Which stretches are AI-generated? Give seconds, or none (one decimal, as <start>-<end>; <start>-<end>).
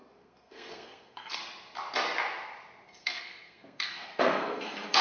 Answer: 0.0-1.4; 3.0-5.0